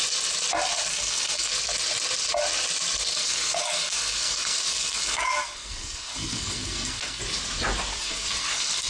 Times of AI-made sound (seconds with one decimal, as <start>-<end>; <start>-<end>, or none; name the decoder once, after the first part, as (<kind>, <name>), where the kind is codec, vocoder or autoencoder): 0.9-1.5 (codec, SNAC); 3.1-7.2; 7.9-8.9